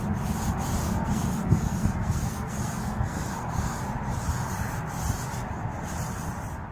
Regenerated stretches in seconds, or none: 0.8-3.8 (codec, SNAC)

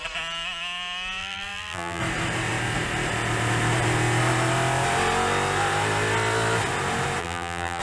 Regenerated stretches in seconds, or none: 1.2-2.0 (vocoder, BigVGAN v2); 7.2-7.8

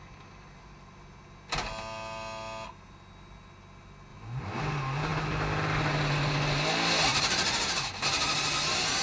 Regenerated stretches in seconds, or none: 7.1-8.0 (vocoder, BigVGAN v2)

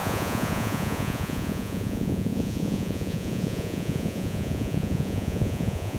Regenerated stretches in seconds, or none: 0.0-6.0 (vocoder, Vocos)

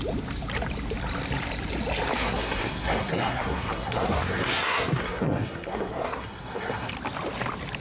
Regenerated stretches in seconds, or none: 2.2-6.9 (codec, SNAC)

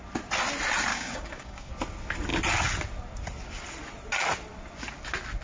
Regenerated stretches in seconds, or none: 0.9-1.7 (codec, DAC)